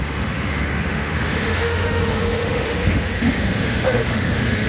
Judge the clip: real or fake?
fake